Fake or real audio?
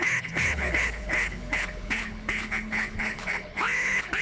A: fake